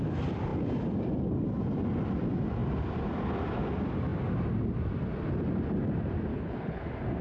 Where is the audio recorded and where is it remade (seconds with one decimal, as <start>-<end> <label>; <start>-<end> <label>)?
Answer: 0.0-6.3 recorded; 6.3-6.8 remade; 6.8-7.2 recorded